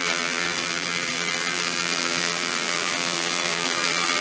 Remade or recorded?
remade